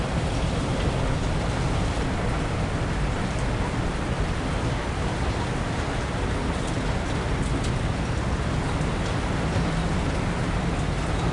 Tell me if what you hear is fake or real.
real